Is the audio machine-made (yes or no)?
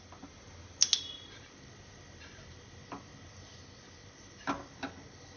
no